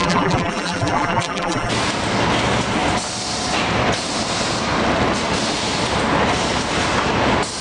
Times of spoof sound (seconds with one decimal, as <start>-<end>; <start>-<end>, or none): 0.0-1.7